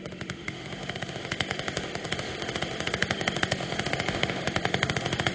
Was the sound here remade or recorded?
remade